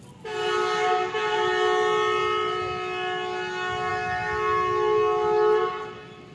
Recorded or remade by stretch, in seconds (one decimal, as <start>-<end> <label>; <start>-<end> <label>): 0.0-6.3 recorded